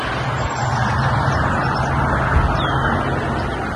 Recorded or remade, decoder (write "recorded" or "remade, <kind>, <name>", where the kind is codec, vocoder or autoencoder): recorded